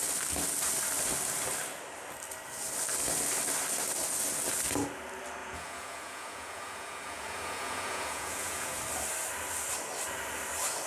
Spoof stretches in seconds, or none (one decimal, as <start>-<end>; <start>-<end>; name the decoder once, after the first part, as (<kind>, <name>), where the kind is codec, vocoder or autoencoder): 5.4-8.8 (vocoder, Vocos)